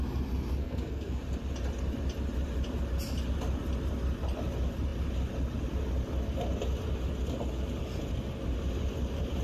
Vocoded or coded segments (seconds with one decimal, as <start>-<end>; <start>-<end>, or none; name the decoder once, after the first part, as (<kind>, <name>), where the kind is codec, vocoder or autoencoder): 0.6-1.2 (codec, SNAC)